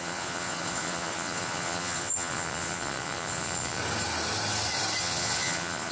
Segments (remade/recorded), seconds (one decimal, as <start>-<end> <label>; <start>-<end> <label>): 0.0-3.8 remade; 3.8-5.0 recorded; 5.0-5.9 remade

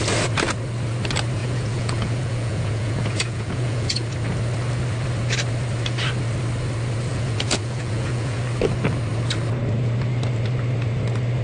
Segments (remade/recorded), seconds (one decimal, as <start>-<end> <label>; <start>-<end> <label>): 0.0-1.4 recorded; 1.4-4.1 remade; 4.1-7.1 recorded; 7.1-8.4 remade; 8.4-11.4 recorded

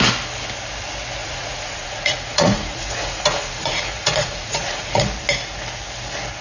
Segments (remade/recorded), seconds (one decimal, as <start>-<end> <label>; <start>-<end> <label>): 0.0-1.2 recorded; 1.2-5.0 remade; 5.0-6.4 recorded

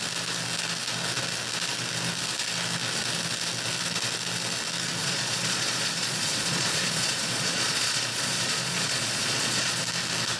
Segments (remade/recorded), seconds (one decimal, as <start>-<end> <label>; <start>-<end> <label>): 0.0-5.0 recorded; 5.0-9.8 remade; 9.8-10.4 recorded

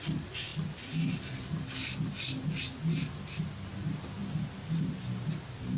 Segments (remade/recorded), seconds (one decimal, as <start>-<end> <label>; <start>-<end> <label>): 0.0-5.8 recorded

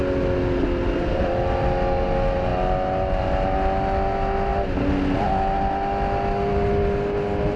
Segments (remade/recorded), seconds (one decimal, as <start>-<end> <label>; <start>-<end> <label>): 0.0-7.6 recorded

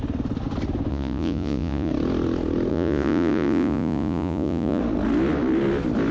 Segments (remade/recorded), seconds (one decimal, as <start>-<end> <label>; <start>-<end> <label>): 0.0-0.9 recorded; 0.9-1.9 remade; 1.9-2.7 recorded; 2.7-4.8 remade; 4.8-6.1 recorded